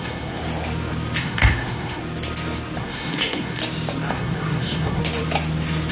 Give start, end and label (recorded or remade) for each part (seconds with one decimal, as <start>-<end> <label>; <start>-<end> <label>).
0.0-0.4 remade; 0.4-1.2 recorded; 1.2-2.0 remade; 2.0-2.8 recorded; 2.8-3.6 remade; 3.6-4.1 recorded; 4.1-5.0 remade; 5.0-5.9 recorded